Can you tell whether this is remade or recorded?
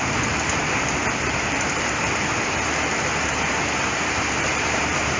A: remade